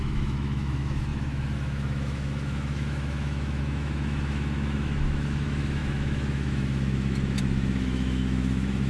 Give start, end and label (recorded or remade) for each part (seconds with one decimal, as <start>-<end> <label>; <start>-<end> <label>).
0.0-8.9 remade